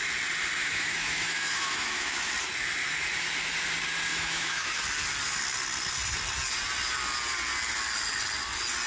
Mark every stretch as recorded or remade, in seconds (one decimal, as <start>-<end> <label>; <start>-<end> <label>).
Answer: 0.0-0.6 recorded; 0.6-2.3 remade; 2.3-4.1 recorded; 4.1-4.8 remade; 4.8-8.9 recorded